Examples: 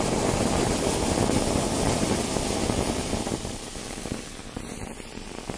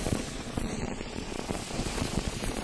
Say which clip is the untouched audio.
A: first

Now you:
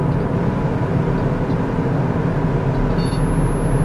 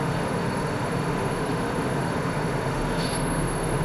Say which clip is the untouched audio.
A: first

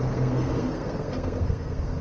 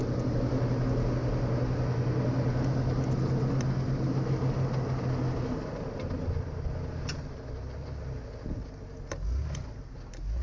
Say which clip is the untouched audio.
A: second